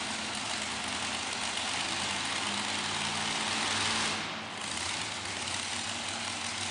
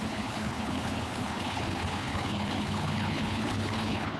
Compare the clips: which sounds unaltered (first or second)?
first